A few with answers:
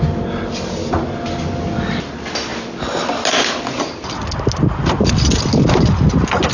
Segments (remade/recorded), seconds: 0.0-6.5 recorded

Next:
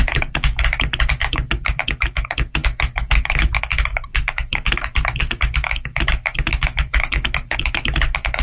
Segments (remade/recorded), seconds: 0.0-8.4 remade

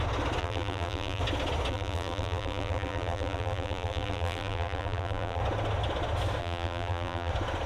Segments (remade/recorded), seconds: 0.0-0.4 recorded; 0.4-1.2 remade; 1.2-1.7 recorded; 1.7-5.4 remade; 5.4-6.4 recorded; 6.4-7.3 remade; 7.3-7.7 recorded

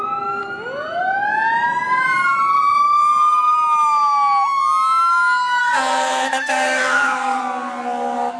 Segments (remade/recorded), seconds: 0.0-5.6 recorded; 5.6-7.4 remade; 7.4-8.4 recorded